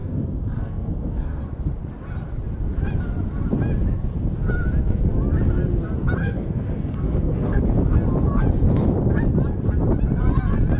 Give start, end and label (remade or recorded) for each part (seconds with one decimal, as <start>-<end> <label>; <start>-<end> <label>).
0.0-1.4 remade; 1.4-6.2 recorded; 6.2-7.6 remade; 7.6-10.8 recorded